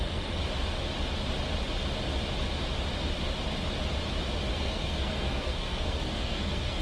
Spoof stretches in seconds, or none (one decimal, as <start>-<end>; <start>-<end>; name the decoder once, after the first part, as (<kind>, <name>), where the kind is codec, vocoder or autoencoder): 0.0-0.4 (codec, SNAC); 4.5-6.8